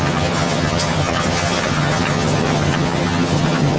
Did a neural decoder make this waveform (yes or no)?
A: yes